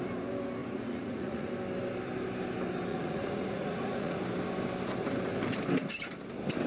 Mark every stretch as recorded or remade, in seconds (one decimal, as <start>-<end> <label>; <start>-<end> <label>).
0.0-0.6 recorded; 0.6-1.5 remade; 1.5-2.9 recorded; 2.9-4.2 remade; 4.2-6.7 recorded